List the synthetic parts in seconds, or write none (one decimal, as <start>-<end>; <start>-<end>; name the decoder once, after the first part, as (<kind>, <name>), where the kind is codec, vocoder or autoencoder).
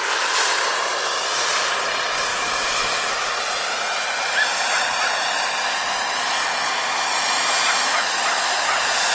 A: 2.3-3.3 (autoencoder, DAC-VAE)